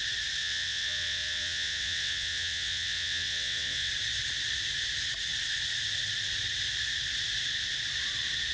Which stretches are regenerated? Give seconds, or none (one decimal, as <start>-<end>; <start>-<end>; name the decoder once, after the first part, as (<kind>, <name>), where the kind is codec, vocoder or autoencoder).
0.4-3.9 (vocoder, WaveNeXt)